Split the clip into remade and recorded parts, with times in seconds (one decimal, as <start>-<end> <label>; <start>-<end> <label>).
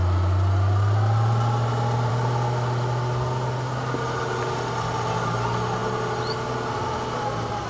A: 0.0-7.7 recorded